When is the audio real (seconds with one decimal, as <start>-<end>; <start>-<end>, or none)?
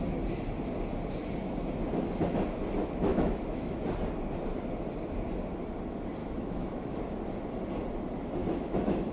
0.0-3.1; 3.7-6.2; 7.0-8.4